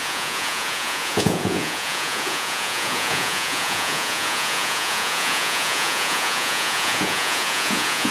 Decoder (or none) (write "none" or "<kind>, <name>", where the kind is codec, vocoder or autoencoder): vocoder, Vocos